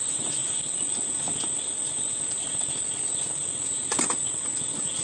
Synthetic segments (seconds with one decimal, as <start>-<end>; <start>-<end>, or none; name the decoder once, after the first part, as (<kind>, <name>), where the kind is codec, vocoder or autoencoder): none